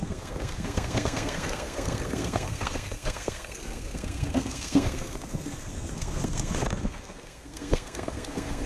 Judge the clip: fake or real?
fake